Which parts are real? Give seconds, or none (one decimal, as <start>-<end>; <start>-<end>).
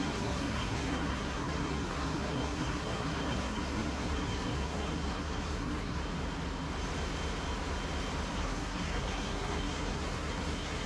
6.0-8.3